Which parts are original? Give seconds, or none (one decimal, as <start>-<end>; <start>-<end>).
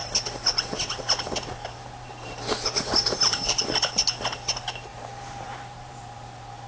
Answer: 0.0-1.6; 3.7-4.9